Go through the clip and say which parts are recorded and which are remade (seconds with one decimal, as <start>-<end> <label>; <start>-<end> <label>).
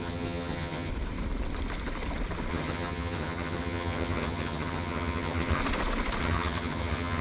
0.0-0.9 remade; 0.9-2.5 recorded; 2.5-5.6 remade; 5.6-6.2 recorded; 6.2-7.2 remade